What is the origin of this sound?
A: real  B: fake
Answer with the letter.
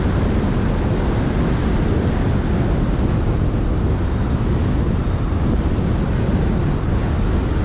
A